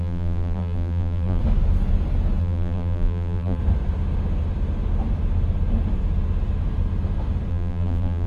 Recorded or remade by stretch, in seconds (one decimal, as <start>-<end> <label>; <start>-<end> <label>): 0.0-1.4 remade; 1.4-2.4 recorded; 2.4-3.6 remade; 3.6-7.5 recorded; 7.5-8.3 remade